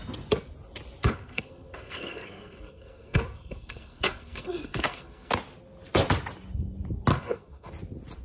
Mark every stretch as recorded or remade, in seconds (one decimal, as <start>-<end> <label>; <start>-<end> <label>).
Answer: 0.0-1.0 recorded; 1.0-5.3 remade; 5.3-7.1 recorded; 7.1-7.7 remade; 7.7-8.2 recorded